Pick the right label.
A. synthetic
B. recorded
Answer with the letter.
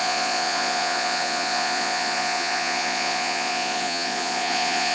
A